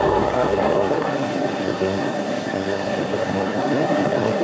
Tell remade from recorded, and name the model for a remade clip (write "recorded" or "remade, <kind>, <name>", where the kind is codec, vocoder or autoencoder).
remade, codec, SNAC